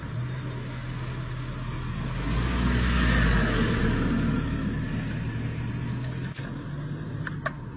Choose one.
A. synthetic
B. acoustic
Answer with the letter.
B